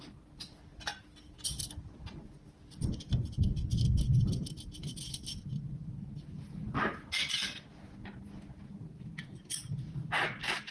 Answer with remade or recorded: recorded